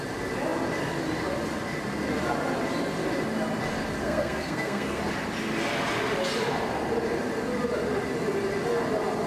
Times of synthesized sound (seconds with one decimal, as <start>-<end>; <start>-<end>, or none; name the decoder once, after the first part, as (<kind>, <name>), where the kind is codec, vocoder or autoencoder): 4.0-5.0 (codec, SNAC)